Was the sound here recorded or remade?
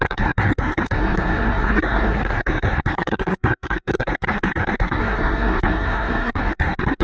remade